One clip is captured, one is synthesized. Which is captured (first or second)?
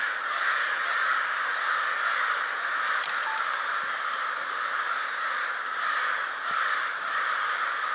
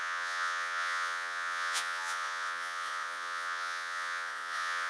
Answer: first